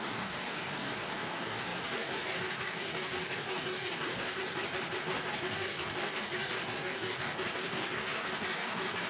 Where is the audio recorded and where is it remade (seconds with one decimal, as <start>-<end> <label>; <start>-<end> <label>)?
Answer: 0.0-4.4 remade; 4.4-5.0 recorded; 5.0-9.1 remade